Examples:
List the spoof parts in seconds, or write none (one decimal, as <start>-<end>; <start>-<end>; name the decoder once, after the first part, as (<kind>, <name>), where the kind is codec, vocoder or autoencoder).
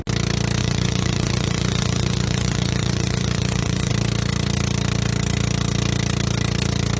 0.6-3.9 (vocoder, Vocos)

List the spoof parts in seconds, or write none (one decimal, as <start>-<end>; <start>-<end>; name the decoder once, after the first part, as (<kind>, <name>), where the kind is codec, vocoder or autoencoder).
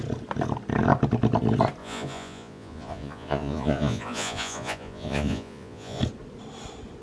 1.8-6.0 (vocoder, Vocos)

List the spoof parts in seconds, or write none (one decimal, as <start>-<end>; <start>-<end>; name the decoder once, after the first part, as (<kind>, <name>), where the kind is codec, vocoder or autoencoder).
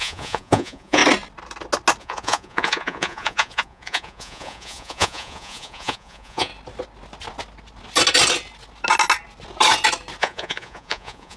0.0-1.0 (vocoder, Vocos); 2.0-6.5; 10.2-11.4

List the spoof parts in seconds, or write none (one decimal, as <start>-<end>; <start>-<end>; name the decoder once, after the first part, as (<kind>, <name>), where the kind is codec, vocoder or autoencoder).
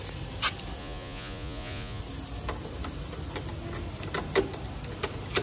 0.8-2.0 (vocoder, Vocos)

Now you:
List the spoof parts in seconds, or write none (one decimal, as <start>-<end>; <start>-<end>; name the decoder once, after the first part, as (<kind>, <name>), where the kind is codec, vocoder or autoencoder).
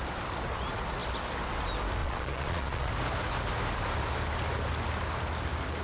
2.0-2.9 (vocoder, Vocos)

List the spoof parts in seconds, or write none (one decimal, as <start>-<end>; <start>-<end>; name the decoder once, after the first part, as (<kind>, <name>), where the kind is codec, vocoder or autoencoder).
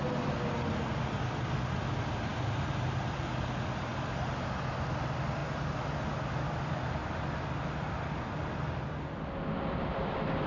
none